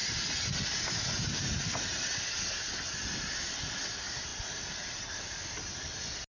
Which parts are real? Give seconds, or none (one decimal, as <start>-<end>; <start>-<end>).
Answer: 0.0-6.3